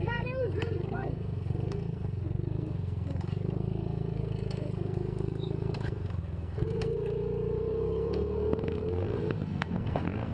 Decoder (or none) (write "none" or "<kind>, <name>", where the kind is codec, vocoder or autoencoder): codec, SNAC